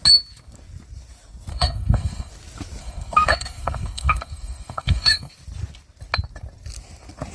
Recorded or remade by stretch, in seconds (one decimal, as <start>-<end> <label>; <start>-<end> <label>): 0.0-1.5 recorded; 1.5-2.3 remade; 2.3-2.8 recorded; 2.8-5.3 remade; 5.3-7.3 recorded